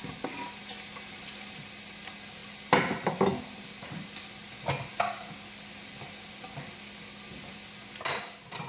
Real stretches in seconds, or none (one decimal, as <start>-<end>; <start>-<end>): 0.0-8.7